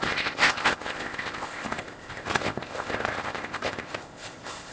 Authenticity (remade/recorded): remade